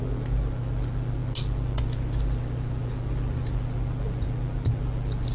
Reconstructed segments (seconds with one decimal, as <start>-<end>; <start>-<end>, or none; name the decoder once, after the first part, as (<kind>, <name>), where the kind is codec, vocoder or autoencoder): none